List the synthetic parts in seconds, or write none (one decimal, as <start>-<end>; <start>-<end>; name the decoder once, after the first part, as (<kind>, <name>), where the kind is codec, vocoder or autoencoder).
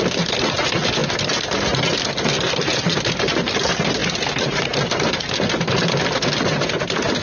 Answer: none